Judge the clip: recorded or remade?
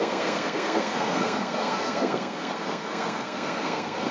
remade